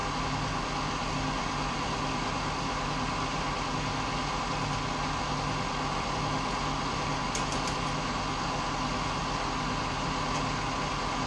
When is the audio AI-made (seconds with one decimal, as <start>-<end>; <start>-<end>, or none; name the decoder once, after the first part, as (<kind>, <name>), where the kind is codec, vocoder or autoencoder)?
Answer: none

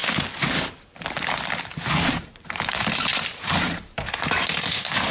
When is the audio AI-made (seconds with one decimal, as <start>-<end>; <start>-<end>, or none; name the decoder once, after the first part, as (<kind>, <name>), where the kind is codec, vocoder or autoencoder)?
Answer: 2.1-5.1 (vocoder, BigVGAN v2)

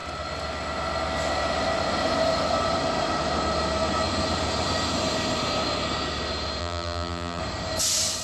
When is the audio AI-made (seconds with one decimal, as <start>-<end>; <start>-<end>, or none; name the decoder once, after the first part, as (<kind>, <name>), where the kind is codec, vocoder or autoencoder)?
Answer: 6.6-7.4 (vocoder, BigVGAN v2)

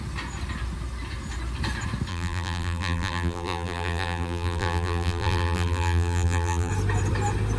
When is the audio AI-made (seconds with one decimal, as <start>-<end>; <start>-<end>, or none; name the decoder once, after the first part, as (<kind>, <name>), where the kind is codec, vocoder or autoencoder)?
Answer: 2.1-6.7 (vocoder, BigVGAN v2)

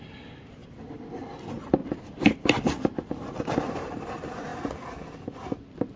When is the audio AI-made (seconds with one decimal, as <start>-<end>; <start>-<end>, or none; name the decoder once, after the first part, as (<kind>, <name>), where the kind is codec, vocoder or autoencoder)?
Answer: 0.6-1.3 (vocoder, BigVGAN v2); 1.8-4.1

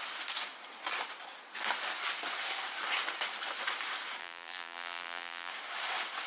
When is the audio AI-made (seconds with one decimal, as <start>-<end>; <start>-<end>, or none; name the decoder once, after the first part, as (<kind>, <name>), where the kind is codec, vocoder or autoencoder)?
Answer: 4.2-5.5 (vocoder, BigVGAN v2)

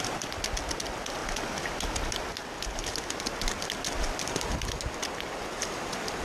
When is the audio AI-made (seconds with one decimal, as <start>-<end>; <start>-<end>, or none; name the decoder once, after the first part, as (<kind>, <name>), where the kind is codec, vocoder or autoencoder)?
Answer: none

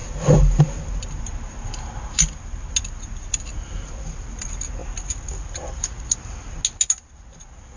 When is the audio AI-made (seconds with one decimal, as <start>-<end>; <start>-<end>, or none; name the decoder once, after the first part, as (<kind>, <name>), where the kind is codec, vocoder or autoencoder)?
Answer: 0.0-0.6 (vocoder, BigVGAN v2); 4.8-5.9